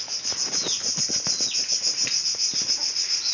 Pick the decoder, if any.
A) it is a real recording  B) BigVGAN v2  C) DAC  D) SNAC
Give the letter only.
A